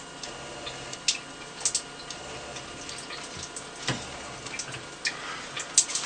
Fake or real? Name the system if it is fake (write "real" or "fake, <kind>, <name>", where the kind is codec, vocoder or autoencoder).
real